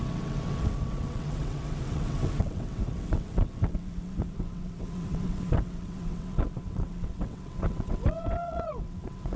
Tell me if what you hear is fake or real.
fake